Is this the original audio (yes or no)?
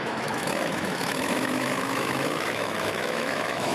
no